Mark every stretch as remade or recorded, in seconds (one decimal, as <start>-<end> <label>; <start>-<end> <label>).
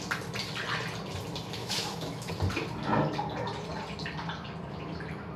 0.0-1.6 recorded; 1.6-2.3 remade; 2.3-5.4 recorded